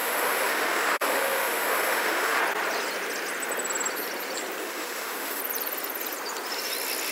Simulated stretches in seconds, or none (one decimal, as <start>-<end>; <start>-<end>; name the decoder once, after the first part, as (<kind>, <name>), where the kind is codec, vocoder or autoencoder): 0.0-2.4 (autoencoder, DAC-VAE); 4.6-5.4